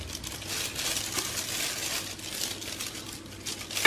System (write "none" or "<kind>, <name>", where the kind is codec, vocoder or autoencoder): none